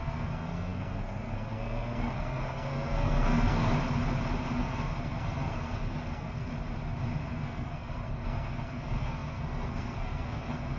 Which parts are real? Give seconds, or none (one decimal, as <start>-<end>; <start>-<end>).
3.7-4.6; 6.5-7.3